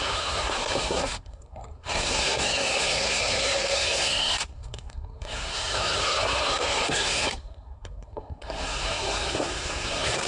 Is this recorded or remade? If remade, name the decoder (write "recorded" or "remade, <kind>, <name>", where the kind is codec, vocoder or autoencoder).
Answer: remade, codec, SNAC